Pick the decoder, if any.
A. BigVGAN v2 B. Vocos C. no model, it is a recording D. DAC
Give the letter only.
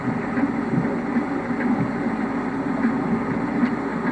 C